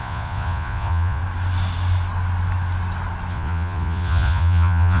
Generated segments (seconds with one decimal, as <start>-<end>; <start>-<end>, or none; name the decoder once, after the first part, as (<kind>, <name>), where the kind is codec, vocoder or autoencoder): 0.0-1.2 (vocoder, Vocos); 3.3-5.0